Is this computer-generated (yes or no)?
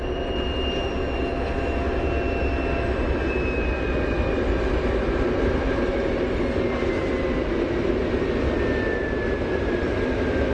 no